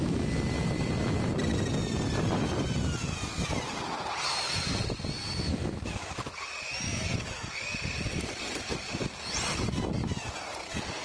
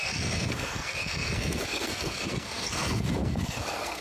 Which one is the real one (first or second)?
first